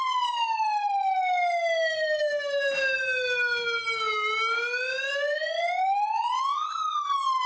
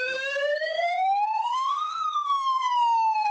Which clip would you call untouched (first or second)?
first